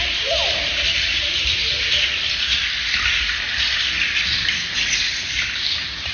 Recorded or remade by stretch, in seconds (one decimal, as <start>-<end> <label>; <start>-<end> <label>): 0.0-1.6 remade; 1.6-5.3 recorded; 5.3-6.1 remade